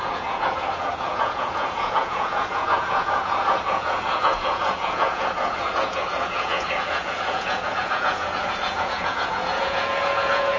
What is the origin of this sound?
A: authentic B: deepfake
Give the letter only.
B